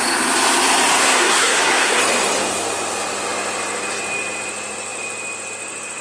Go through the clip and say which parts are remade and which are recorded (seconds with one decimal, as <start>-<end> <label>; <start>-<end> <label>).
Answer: 0.0-1.0 recorded; 1.0-2.0 remade; 2.0-6.0 recorded